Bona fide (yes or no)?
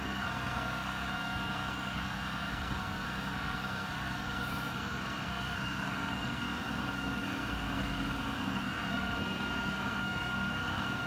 no